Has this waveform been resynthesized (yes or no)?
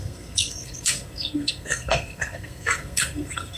yes